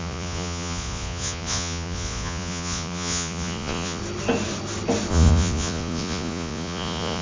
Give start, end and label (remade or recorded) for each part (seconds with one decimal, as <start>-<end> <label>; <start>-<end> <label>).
0.0-4.0 remade; 4.0-5.1 recorded; 5.1-7.2 remade